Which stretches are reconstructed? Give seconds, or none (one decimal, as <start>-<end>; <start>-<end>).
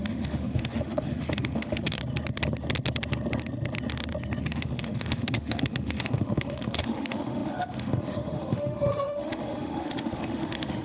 0.0-2.0; 4.4-10.8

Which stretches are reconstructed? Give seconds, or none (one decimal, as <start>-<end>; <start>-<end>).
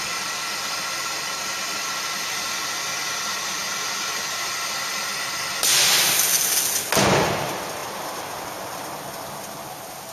none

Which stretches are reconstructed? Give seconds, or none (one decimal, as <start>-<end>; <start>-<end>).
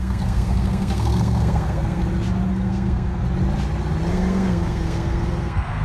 0.0-2.0; 2.5-3.2; 4.1-5.8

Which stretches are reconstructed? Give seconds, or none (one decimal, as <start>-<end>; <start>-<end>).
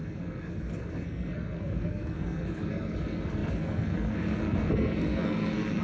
0.0-5.8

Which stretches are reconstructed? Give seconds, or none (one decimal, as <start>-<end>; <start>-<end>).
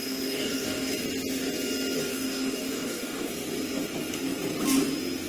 0.0-0.9; 2.1-3.3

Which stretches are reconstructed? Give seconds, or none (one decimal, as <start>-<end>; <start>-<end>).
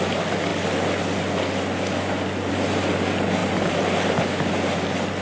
none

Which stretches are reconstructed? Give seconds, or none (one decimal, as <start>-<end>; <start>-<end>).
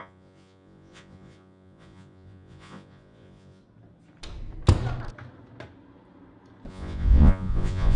0.0-3.6; 6.7-8.0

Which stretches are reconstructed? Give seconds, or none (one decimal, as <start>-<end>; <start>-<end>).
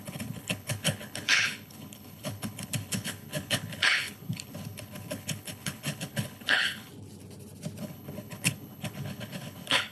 0.0-6.9; 7.8-9.9